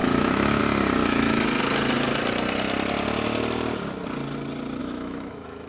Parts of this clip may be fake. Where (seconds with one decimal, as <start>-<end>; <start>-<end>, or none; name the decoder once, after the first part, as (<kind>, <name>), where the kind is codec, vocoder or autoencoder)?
0.0-0.6 (autoencoder, DAC-VAE); 1.0-1.6; 4.8-5.7